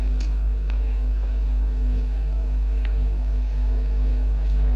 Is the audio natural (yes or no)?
no